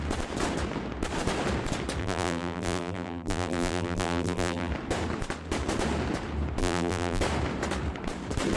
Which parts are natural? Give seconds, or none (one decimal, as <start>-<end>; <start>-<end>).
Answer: 0.0-2.0; 4.7-6.6; 7.2-8.6